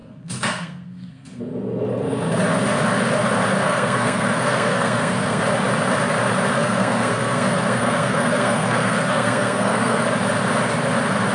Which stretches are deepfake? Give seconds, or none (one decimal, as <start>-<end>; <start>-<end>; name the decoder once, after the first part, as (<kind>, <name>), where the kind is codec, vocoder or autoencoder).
0.0-1.4 (codec, SNAC); 3.6-5.4; 6.6-10.0